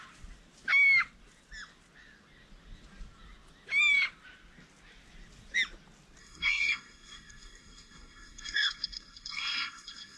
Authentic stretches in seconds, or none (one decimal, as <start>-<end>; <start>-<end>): 0.0-6.2